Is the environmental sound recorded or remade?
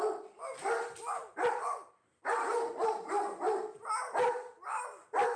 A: recorded